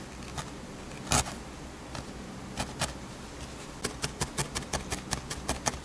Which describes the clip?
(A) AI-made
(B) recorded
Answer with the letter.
B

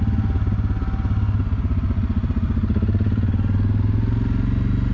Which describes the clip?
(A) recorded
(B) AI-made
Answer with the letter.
A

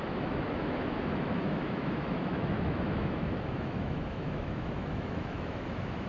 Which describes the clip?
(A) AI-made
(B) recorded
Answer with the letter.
A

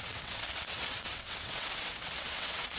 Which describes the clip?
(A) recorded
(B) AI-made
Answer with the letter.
B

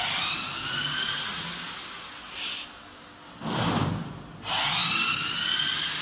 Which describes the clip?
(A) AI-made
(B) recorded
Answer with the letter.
B